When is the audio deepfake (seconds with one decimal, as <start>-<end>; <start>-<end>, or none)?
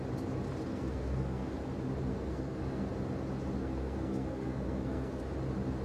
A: 0.7-1.5; 2.1-2.9; 3.6-5.2